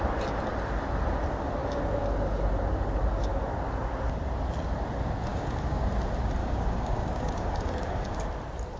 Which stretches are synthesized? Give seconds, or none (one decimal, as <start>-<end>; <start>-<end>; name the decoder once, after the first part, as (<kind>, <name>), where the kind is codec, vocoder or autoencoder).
5.3-5.9 (codec, DAC); 6.4-8.0